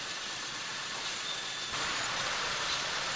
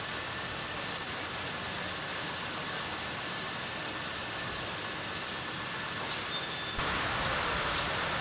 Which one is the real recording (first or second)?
second